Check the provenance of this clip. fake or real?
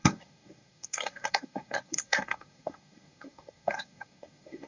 fake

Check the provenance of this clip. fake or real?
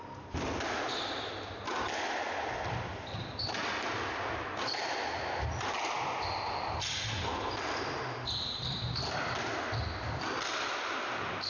real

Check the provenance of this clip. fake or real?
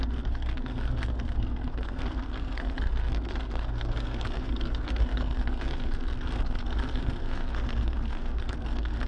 fake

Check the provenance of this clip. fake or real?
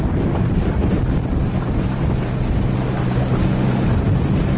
real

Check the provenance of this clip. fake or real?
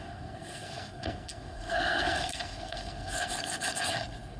fake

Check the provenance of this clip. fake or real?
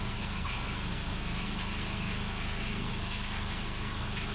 fake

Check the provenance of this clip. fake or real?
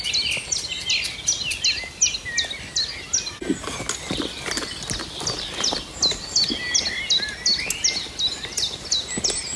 real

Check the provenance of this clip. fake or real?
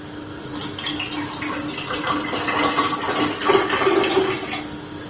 real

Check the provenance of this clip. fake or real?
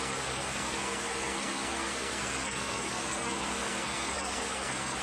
fake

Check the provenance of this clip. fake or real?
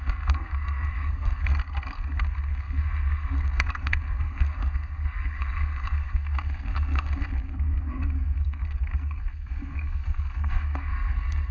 fake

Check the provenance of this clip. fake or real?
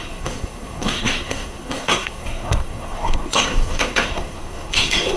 fake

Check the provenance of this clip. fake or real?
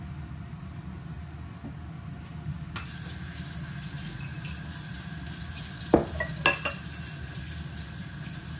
real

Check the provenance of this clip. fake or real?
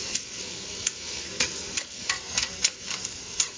fake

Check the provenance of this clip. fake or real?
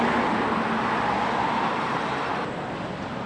real